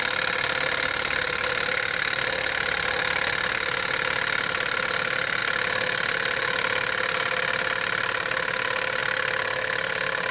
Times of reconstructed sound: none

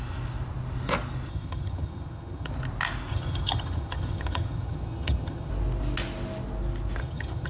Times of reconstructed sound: 1.3-2.5 (vocoder, HiFi-GAN); 3.1-5.5; 7.0-7.5

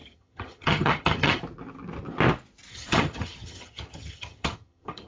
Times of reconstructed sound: 0.0-1.4 (vocoder, HiFi-GAN); 2.7-5.1

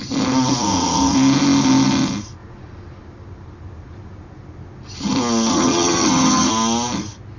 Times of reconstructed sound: 5.5-6.5 (vocoder, HiFi-GAN)

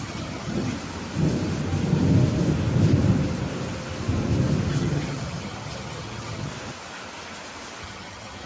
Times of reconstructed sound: 0.0-0.7 (vocoder, HiFi-GAN); 4.7-6.5; 7.8-8.5

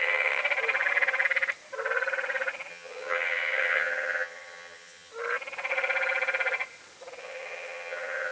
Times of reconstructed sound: 0.0-0.4 (vocoder, HiFi-GAN); 2.7-5.1; 7.2-8.3

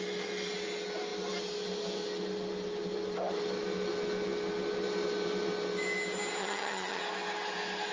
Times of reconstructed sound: 6.4-7.0 (vocoder, HiFi-GAN)